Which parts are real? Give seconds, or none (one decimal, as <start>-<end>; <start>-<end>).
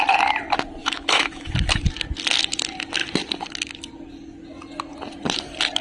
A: 0.0-0.8; 1.5-5.8